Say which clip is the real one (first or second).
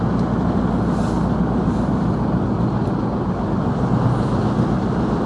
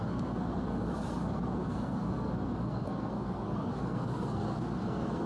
first